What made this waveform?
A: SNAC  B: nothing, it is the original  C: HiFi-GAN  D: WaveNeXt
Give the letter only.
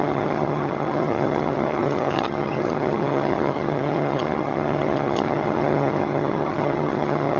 C